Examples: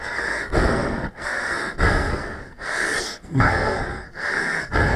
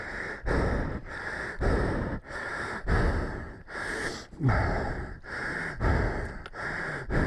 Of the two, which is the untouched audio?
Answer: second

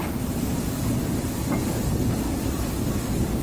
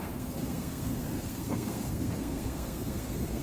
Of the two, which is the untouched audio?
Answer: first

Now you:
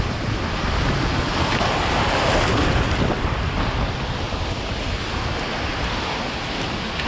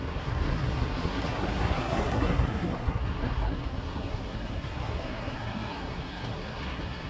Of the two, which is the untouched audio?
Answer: first